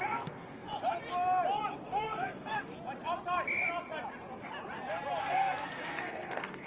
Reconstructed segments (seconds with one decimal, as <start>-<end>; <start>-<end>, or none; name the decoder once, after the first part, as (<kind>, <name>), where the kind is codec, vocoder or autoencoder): 0.0-0.7 (codec, SNAC); 1.9-2.7; 5.2-6.7